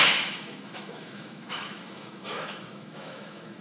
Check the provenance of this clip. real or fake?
fake